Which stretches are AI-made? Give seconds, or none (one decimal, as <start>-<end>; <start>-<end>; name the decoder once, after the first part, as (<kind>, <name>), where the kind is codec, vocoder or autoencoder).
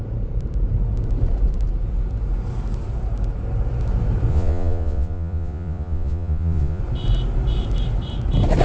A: 4.3-6.8 (vocoder, Vocos)